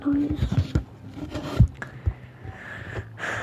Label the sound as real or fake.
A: real